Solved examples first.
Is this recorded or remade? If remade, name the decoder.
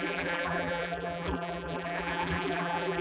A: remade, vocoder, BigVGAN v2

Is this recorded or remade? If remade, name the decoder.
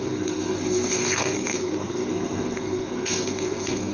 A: remade, codec, SNAC